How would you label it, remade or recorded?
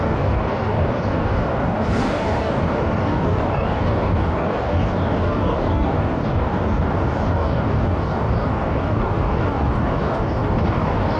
remade